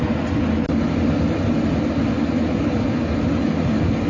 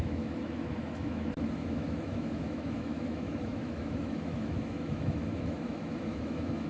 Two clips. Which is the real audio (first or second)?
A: first